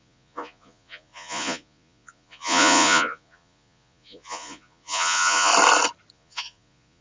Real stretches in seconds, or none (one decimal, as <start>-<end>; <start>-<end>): 5.5-6.1

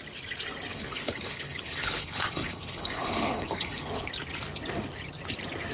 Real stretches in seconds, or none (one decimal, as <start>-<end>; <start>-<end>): 0.0-0.7; 4.1-5.7

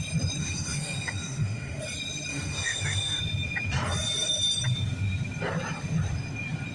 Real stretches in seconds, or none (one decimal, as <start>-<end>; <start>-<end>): 0.0-0.4; 1.8-2.3; 3.2-6.7

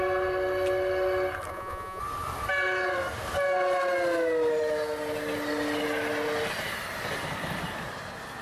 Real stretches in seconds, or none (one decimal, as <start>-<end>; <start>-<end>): 0.0-1.5; 2.0-8.4

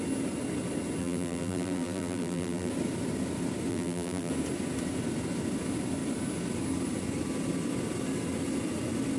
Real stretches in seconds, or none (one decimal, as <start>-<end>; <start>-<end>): 0.0-1.0; 2.7-3.7; 4.3-9.2

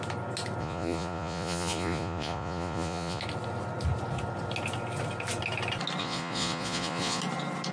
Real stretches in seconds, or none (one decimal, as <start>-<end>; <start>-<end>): 0.0-0.6; 3.2-6.0; 7.2-7.7

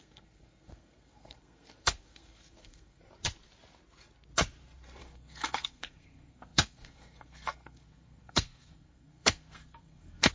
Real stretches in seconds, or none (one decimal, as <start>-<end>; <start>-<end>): 3.0-5.0